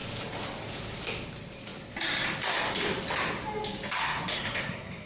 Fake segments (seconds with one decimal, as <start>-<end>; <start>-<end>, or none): 4.0-5.1